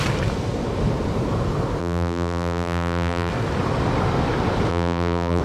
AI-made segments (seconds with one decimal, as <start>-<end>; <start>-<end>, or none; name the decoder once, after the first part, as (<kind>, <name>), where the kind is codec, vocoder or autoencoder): 1.8-3.3 (vocoder, BigVGAN v2); 4.7-5.4